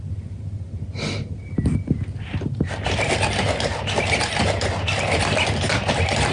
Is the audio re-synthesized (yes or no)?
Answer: no